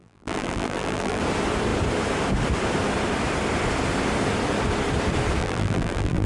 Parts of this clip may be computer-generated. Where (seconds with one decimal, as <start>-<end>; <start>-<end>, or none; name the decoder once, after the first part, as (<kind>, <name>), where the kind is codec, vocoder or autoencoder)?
0.0-1.2 (vocoder, BigVGAN v2); 5.4-6.3

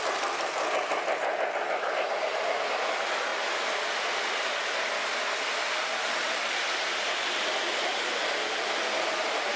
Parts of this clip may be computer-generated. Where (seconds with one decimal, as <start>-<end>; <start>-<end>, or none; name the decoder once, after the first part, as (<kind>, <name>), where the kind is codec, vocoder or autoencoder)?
3.3-5.6 (vocoder, BigVGAN v2); 6.2-8.3

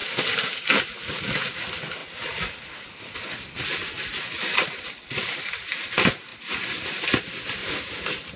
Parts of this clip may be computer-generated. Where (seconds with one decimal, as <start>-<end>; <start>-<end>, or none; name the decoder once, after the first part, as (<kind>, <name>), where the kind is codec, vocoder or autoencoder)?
0.6-2.0 (vocoder, BigVGAN v2); 4.8-7.6